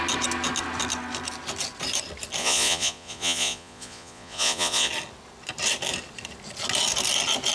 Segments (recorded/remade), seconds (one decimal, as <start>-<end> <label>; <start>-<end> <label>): 0.0-2.4 recorded; 2.4-4.9 remade; 4.9-7.5 recorded